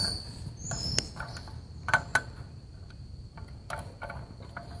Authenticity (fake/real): real